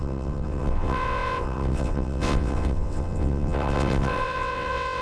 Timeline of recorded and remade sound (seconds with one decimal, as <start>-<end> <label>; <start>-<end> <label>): 0.0-5.0 remade

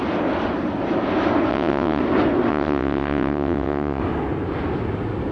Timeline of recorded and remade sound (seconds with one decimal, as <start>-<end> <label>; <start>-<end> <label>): 0.0-1.5 recorded; 1.5-2.0 remade; 2.0-2.5 recorded; 2.5-4.0 remade; 4.0-5.3 recorded

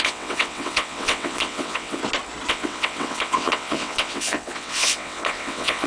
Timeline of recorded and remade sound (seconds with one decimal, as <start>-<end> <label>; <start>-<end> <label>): 0.0-2.0 remade; 2.0-2.5 recorded; 2.5-5.9 remade

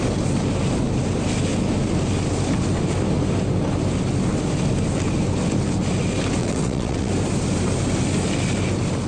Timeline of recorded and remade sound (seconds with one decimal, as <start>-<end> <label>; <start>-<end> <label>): 0.0-6.4 recorded; 6.4-7.1 remade; 7.1-9.1 recorded

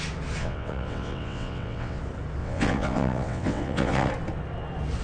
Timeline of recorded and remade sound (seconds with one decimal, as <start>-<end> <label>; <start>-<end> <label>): 0.0-0.4 recorded; 0.4-2.0 remade; 2.0-2.4 recorded; 2.4-4.1 remade; 4.1-5.0 recorded

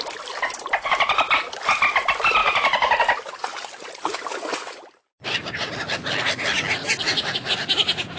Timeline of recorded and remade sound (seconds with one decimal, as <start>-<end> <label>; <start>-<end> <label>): 0.0-6.8 recorded; 6.8-7.5 remade; 7.5-8.2 recorded

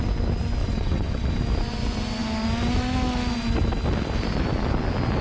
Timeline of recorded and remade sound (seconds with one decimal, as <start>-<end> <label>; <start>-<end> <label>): 0.0-0.6 recorded; 0.6-1.3 remade; 1.3-5.2 recorded